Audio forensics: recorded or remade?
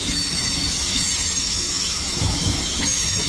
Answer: remade